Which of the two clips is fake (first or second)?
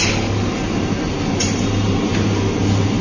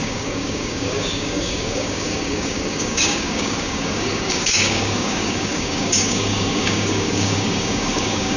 second